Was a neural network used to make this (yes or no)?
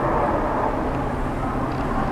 no